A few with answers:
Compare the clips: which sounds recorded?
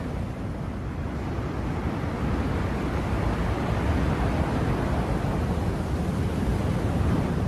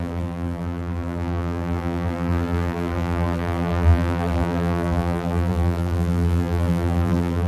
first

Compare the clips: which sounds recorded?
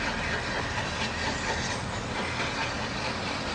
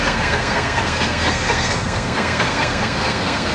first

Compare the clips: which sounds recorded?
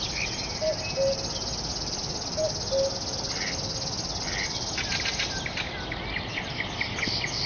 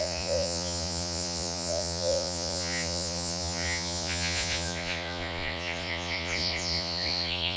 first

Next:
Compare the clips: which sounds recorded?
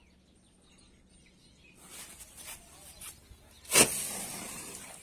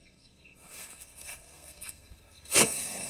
first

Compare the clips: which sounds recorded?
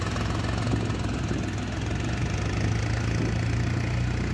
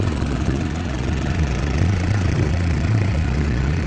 first